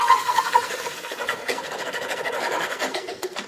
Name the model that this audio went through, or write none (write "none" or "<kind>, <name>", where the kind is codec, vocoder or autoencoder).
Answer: codec, SNAC